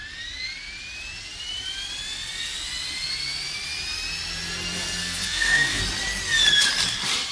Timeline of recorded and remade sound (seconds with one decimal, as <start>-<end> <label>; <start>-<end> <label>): 0.0-5.0 recorded; 5.0-5.8 remade; 5.8-7.3 recorded